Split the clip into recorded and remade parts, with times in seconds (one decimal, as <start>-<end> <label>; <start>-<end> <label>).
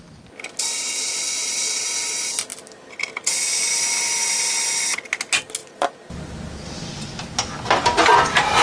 0.0-8.6 recorded